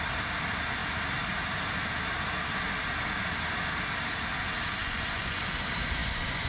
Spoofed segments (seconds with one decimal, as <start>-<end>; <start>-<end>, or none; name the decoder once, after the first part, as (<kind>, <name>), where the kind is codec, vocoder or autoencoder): 4.8-5.4 (vocoder, Vocos); 6.0-6.5